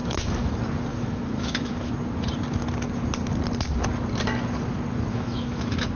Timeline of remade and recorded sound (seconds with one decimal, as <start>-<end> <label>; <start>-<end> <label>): 0.0-0.5 remade; 0.5-0.9 recorded; 0.9-1.9 remade; 1.9-5.1 recorded; 5.1-5.9 remade